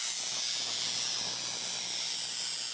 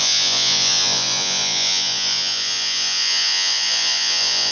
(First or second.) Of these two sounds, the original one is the first